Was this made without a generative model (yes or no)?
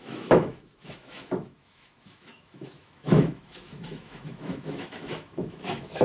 no